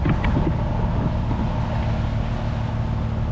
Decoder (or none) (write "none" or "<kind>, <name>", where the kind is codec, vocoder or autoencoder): none